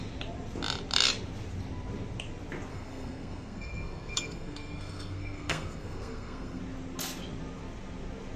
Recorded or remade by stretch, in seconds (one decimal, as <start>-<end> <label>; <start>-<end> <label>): 0.0-2.7 recorded; 2.7-6.6 remade; 6.6-8.4 recorded